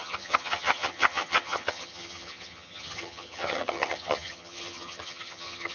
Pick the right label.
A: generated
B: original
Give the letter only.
A